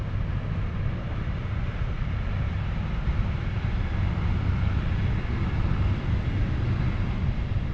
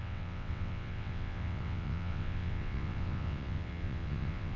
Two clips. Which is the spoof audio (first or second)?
second